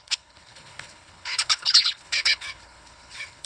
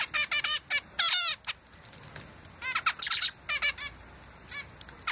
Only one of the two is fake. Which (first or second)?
first